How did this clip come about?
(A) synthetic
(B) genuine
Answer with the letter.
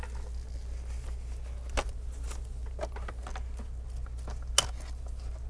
B